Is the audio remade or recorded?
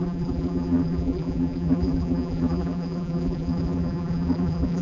remade